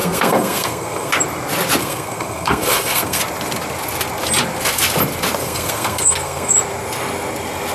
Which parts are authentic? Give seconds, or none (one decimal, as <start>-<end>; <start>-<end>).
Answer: 1.1-1.8; 3.2-5.4; 6.5-7.7